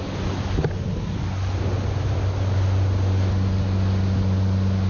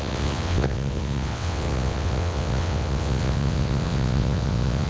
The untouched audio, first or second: first